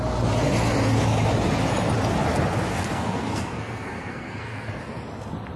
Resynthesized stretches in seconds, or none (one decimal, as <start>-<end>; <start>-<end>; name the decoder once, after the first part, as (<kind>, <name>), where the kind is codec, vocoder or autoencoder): 2.7-4.8 (codec, SNAC)

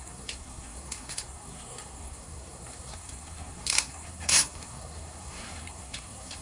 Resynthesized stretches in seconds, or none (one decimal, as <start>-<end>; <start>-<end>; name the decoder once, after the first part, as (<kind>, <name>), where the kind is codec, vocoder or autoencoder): 0.0-6.4 (codec, SNAC)

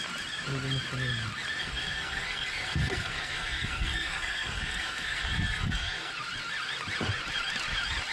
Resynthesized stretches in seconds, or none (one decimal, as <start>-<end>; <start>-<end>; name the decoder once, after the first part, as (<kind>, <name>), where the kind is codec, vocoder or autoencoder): 1.6-6.1 (codec, SNAC)

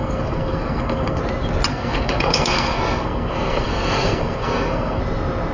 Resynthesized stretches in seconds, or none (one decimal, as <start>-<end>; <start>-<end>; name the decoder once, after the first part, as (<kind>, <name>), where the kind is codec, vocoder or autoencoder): 0.0-1.2 (codec, SNAC); 1.7-5.0

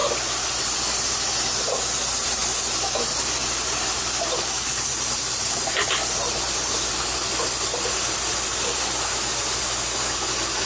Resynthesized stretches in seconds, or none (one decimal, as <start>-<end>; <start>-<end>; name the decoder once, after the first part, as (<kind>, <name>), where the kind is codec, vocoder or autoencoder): none

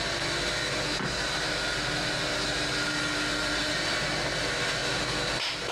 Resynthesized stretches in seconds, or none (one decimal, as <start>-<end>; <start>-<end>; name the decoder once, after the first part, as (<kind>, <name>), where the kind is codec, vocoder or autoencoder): none